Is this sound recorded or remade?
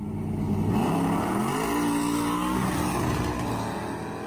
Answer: recorded